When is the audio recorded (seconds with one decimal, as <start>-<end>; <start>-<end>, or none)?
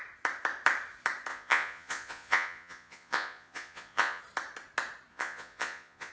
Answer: 0.0-1.3; 4.2-5.1